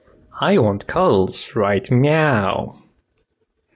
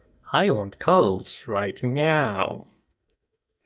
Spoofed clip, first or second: second